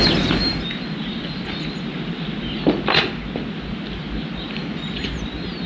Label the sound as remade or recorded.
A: recorded